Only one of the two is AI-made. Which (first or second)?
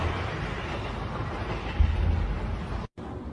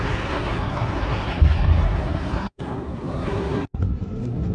second